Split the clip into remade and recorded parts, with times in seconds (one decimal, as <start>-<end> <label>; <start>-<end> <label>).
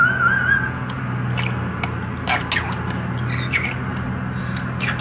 0.0-1.0 remade; 1.0-5.0 recorded